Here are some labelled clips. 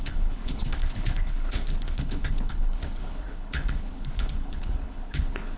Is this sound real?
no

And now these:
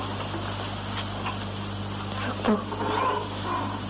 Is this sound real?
yes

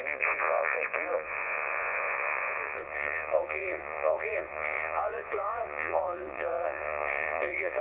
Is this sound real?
no